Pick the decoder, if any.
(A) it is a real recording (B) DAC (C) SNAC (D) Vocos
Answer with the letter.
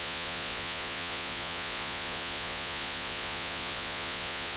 D